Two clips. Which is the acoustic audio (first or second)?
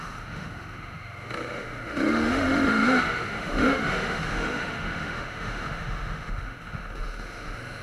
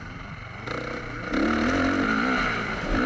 second